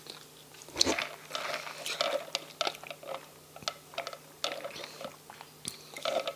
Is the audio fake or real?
real